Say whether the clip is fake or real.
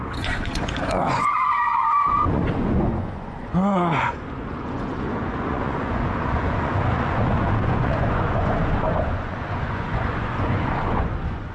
fake